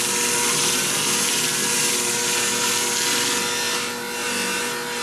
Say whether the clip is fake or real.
real